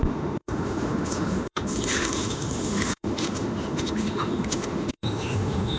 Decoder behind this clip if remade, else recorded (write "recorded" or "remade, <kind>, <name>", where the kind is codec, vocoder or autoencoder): remade, autoencoder, DAC-VAE